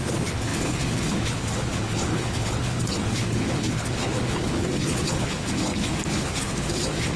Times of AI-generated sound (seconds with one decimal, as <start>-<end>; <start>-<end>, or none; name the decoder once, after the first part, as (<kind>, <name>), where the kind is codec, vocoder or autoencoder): 0.0-7.2 (codec, HILCodec)